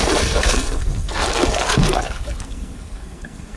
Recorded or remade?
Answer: remade